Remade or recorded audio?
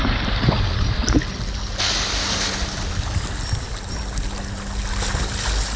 recorded